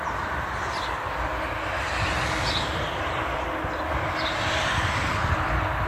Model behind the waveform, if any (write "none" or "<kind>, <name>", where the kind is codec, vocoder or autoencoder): none